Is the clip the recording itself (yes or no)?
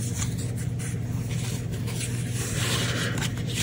yes